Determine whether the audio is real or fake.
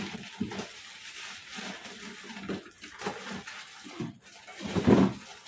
real